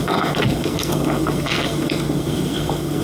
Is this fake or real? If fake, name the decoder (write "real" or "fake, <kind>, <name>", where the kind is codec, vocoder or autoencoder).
fake, codec, SNAC